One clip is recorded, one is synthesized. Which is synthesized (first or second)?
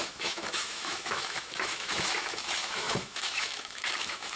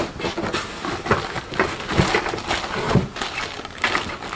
first